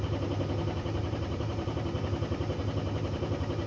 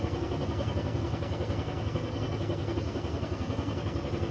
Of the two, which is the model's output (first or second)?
second